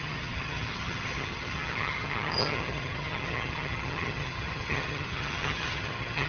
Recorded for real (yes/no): no